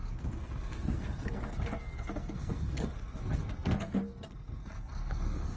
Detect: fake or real fake